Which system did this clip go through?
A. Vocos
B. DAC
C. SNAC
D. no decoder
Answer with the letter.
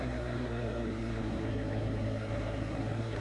C